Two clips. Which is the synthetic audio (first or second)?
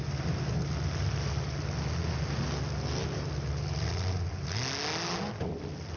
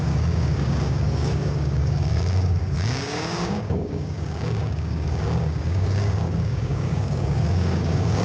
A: second